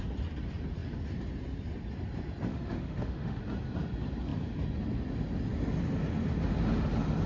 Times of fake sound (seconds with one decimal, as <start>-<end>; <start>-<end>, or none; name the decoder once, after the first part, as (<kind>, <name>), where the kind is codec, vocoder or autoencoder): 2.5-3.4 (autoencoder, DAC-VAE)

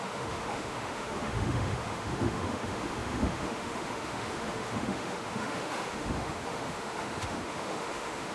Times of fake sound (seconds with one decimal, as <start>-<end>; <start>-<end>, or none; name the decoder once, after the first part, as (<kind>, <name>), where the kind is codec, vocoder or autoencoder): 0.0-8.3 (autoencoder, DAC-VAE)

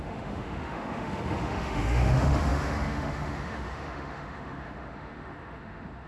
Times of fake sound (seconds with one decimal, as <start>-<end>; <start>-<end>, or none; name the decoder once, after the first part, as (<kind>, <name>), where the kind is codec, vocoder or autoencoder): 0.0-6.1 (autoencoder, DAC-VAE)

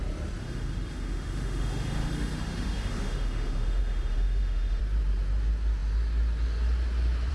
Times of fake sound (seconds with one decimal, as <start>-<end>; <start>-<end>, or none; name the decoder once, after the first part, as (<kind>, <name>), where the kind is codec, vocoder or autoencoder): 0.4-4.8 (autoencoder, DAC-VAE)

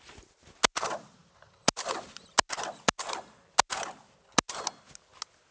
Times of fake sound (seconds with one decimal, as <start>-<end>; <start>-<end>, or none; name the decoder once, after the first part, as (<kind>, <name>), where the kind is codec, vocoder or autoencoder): none

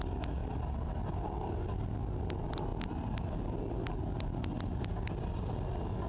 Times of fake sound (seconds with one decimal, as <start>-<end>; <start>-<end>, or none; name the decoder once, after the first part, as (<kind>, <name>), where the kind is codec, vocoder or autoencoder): none